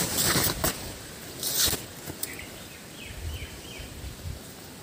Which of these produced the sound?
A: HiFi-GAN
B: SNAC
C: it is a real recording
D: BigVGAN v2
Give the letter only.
C